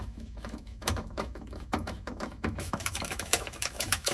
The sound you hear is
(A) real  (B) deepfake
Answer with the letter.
B